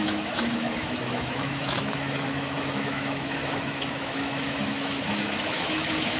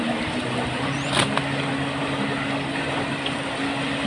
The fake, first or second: first